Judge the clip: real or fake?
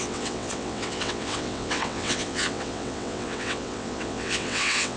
fake